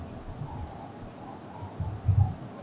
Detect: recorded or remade recorded